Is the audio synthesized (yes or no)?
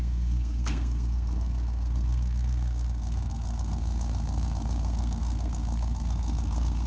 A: yes